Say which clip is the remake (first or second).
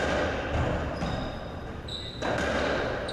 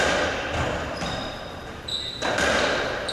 second